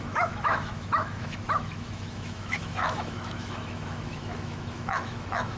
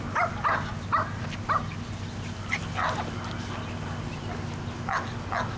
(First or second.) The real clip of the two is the second